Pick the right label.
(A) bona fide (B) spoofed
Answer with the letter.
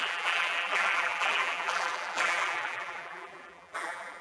B